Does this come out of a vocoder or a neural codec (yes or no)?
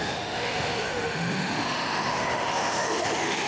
yes